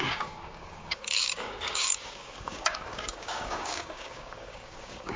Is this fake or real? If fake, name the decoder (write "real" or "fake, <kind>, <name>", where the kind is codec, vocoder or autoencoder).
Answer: fake, codec, DAC